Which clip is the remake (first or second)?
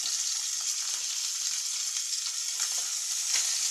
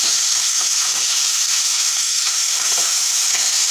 second